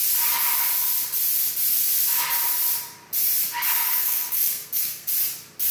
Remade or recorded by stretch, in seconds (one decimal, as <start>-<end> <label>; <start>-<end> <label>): 0.0-3.7 recorded; 3.7-5.1 remade; 5.1-5.7 recorded